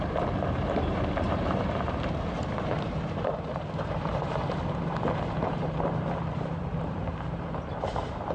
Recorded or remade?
remade